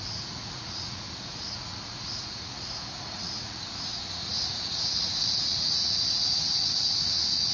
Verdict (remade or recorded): remade